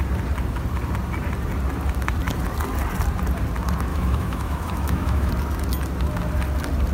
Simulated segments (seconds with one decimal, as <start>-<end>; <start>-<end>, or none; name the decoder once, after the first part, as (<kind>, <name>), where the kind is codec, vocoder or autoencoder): 3.9-5.3 (autoencoder, DAC-VAE)

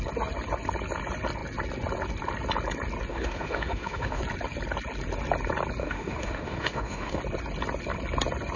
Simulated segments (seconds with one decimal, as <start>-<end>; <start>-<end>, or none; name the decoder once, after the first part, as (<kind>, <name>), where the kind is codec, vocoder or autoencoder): 3.1-4.2 (autoencoder, DAC-VAE); 5.8-7.2

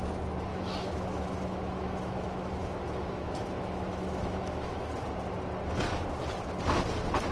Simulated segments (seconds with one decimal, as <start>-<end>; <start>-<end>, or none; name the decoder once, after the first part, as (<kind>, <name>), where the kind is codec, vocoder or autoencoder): 0.5-4.9 (autoencoder, DAC-VAE)

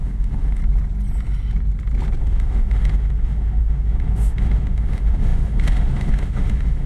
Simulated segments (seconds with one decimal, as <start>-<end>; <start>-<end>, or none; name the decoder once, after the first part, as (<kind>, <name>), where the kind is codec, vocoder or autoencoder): 0.0-0.6 (autoencoder, DAC-VAE); 2.2-6.9

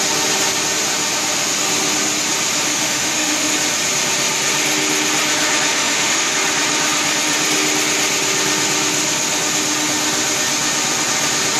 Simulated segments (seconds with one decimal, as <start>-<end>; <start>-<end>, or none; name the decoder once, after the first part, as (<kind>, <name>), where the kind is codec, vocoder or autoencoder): 2.7-3.5 (autoencoder, DAC-VAE); 5.7-6.3